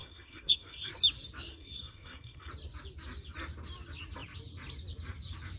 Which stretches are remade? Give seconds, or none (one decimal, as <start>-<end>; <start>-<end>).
0.0-0.9; 1.5-2.5

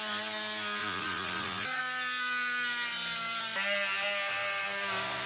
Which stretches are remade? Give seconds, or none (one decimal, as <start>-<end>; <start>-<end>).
0.8-1.8

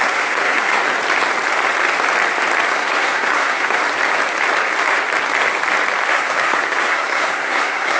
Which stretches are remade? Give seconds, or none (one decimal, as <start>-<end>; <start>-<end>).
0.0-0.8; 2.7-3.8; 6.1-8.0

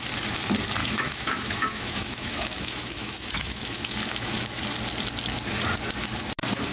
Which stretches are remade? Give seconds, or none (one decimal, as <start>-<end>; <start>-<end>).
0.8-4.6